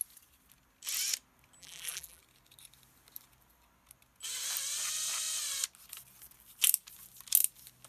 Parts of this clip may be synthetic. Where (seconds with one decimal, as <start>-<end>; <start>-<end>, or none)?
1.6-2.2